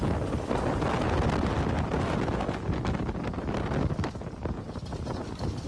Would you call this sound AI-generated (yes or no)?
no